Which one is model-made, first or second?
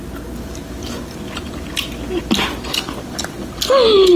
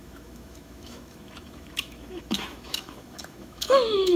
second